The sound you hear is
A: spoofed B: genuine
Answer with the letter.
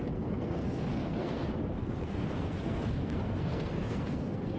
A